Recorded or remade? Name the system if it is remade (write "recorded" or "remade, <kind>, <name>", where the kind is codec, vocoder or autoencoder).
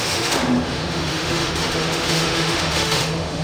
remade, autoencoder, DAC-VAE